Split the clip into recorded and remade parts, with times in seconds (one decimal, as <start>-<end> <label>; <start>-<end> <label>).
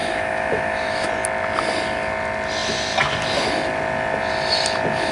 0.0-1.1 remade; 1.1-5.1 recorded